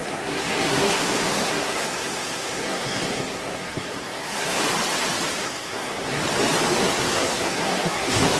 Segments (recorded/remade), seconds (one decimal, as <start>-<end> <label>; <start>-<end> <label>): 0.0-4.6 remade; 4.6-5.4 recorded; 5.4-6.2 remade; 6.2-6.8 recorded; 6.8-8.4 remade